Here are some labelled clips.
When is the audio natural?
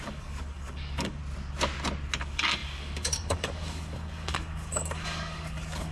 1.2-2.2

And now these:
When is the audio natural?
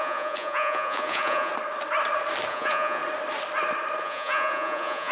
1.5-2.5; 3.0-4.0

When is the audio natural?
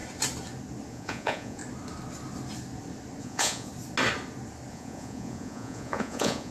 0.0-0.9; 1.6-3.2; 3.7-4.7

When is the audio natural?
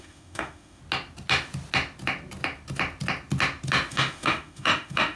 0.8-3.9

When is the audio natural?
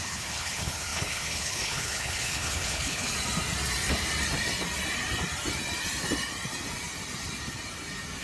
3.1-8.2